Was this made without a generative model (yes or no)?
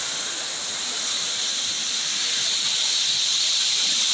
yes